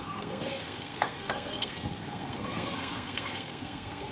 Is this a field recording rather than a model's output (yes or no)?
no